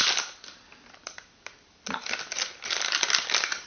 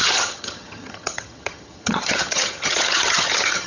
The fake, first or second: second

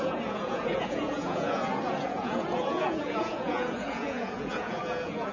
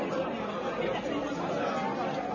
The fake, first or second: first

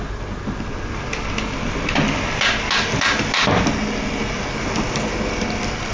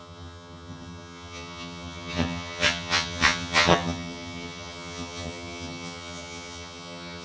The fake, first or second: second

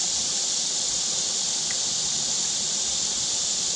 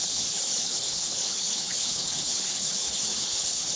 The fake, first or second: second